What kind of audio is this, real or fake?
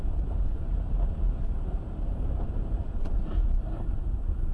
fake